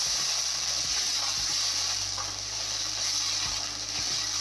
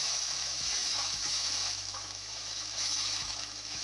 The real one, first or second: first